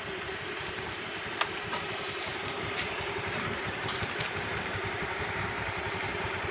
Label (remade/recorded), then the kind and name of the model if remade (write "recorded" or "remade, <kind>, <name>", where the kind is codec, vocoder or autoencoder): remade, vocoder, BigVGAN v2